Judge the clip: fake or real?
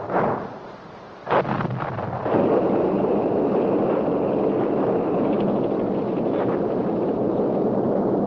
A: real